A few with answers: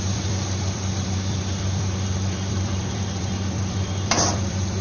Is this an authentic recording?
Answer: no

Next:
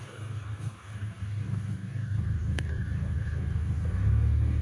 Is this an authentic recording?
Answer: no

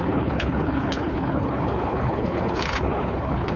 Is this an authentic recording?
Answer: no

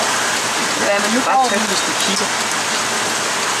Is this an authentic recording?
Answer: yes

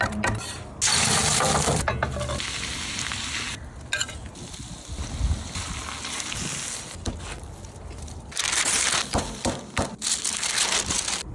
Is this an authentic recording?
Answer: yes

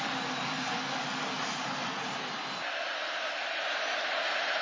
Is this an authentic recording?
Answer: yes